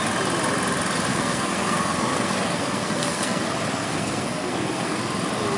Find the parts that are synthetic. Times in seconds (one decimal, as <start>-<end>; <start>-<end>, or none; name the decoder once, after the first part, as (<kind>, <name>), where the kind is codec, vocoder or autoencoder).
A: 1.1-3.4 (codec, SNAC); 3.8-5.0